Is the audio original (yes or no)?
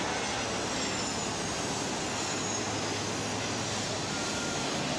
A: yes